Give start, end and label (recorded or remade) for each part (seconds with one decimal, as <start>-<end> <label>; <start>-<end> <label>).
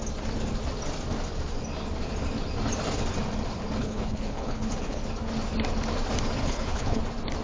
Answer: 0.0-3.8 recorded; 3.8-5.0 remade; 5.0-6.4 recorded; 6.4-7.0 remade; 7.0-7.4 recorded